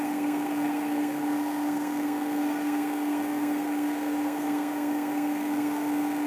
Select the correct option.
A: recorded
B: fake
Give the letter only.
B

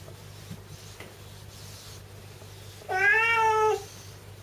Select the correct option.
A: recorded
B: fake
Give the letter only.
A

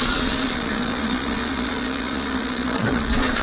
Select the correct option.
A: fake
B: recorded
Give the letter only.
A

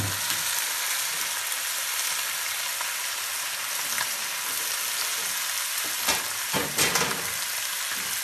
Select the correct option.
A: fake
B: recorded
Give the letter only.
B